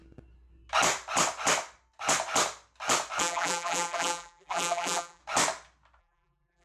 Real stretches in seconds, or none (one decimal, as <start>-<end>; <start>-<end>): 0.0-3.2; 5.2-6.0